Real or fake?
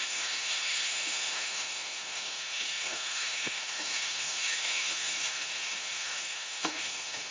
fake